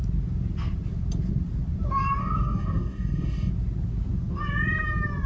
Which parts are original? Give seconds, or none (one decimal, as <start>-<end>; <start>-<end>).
0.0-2.2; 3.5-5.3

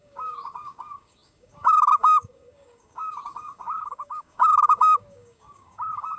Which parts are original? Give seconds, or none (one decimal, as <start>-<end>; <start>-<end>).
none

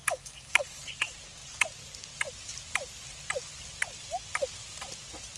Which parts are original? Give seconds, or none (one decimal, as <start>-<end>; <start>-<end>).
0.8-5.4

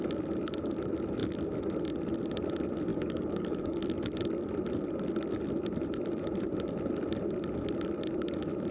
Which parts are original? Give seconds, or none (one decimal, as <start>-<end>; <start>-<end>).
0.0-2.9; 3.8-8.7

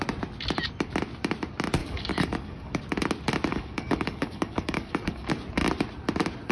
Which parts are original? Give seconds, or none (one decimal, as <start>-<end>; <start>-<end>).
0.0-1.8; 2.8-3.5; 5.3-6.5

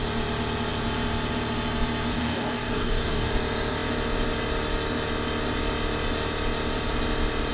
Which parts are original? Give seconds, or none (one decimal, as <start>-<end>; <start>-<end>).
0.0-2.1; 3.3-7.5

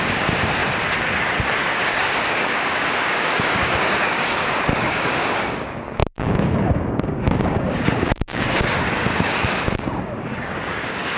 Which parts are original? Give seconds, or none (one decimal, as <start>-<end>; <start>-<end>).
0.6-1.6

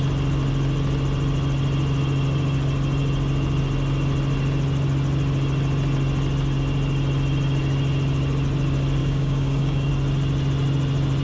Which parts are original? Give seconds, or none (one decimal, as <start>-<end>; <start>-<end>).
0.0-9.0; 9.9-11.2